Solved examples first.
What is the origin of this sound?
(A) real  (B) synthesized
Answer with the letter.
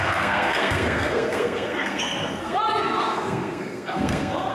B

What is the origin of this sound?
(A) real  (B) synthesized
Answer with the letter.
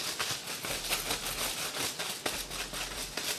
A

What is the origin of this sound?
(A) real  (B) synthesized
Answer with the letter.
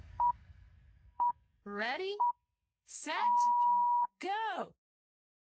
B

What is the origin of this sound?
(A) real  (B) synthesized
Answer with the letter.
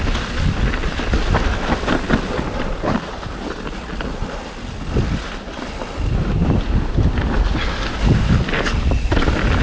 A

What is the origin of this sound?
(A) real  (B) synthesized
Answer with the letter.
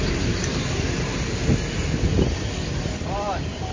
A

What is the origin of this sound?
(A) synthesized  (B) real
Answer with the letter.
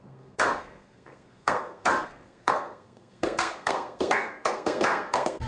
A